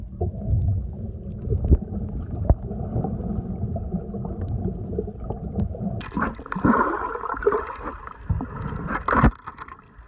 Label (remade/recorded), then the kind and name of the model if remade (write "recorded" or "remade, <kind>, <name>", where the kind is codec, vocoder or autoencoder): recorded